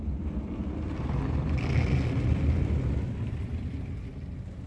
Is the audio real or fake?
real